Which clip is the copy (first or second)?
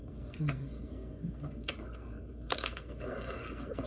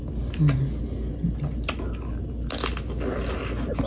first